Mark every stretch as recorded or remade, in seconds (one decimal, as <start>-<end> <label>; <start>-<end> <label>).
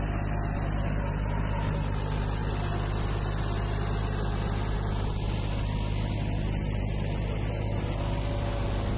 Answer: 0.0-9.0 recorded